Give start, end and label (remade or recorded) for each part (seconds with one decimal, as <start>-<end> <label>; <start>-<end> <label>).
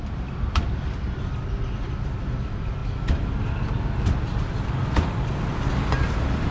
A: 0.0-6.5 recorded